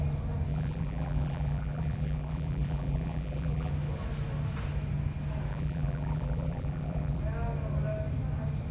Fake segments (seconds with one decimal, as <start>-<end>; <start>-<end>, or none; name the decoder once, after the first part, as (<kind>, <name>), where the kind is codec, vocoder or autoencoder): 0.5-3.7 (vocoder, BigVGAN v2); 5.5-7.2